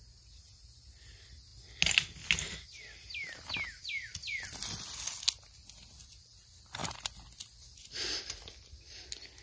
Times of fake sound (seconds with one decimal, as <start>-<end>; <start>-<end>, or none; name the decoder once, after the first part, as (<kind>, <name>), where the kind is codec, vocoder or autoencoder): none